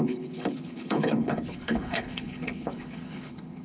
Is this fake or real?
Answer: fake